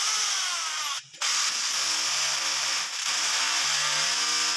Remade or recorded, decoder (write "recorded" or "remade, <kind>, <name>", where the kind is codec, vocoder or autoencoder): recorded